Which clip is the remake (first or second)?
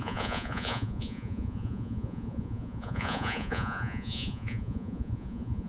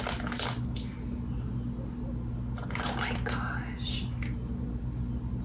first